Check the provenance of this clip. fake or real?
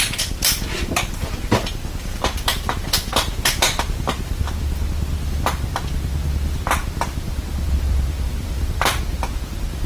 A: fake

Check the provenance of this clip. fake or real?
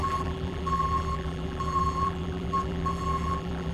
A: fake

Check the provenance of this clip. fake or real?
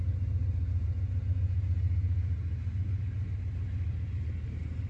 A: real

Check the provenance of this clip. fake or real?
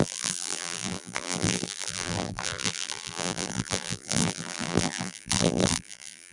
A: fake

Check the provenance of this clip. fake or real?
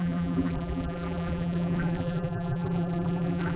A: fake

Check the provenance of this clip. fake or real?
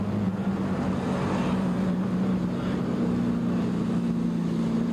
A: real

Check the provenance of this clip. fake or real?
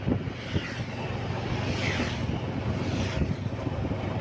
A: real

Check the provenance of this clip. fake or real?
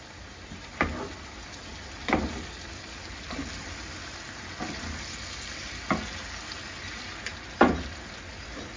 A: real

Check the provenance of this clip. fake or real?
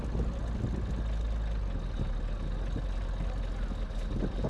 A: real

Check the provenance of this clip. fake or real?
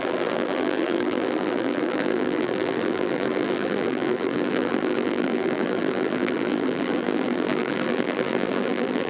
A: fake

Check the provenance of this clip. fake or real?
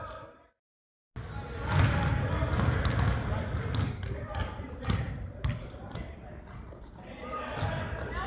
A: real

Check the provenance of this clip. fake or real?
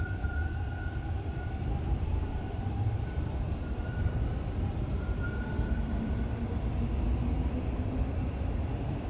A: fake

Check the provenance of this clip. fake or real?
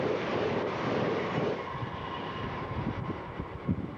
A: fake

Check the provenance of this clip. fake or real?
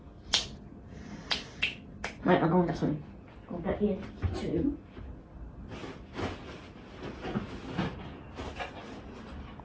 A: real